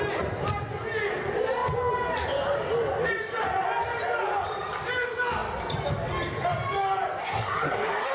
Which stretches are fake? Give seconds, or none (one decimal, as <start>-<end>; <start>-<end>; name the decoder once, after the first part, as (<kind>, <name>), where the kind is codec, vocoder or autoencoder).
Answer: 7.2-8.1 (codec, SNAC)